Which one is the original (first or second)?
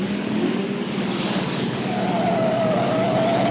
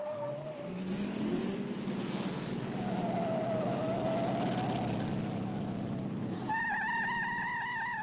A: second